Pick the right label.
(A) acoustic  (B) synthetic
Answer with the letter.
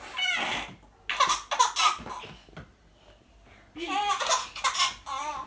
A